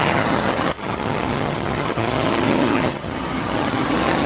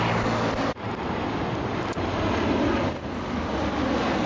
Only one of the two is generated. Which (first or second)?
first